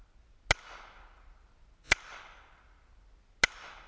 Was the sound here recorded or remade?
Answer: recorded